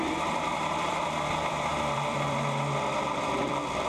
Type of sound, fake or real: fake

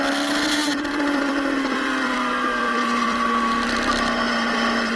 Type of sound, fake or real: fake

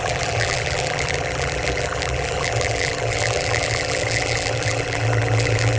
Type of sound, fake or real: fake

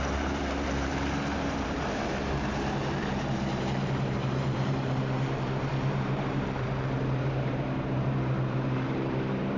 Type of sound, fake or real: fake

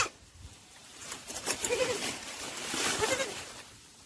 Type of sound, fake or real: fake